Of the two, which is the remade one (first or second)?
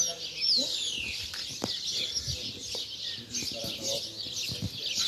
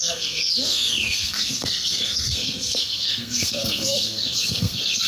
second